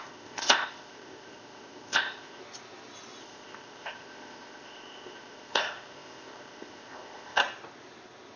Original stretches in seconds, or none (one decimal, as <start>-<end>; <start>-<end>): 2.4-3.2; 7.4-8.4